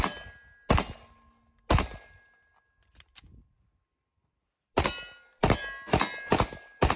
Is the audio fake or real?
real